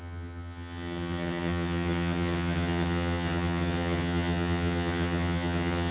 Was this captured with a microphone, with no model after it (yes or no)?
no